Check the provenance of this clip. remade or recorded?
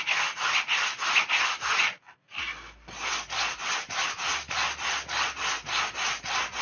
recorded